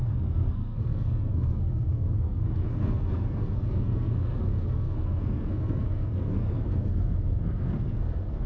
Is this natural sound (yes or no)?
no